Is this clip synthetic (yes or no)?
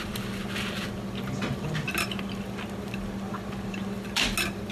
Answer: no